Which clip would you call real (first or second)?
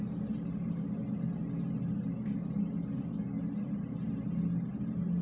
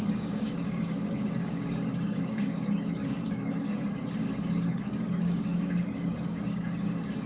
first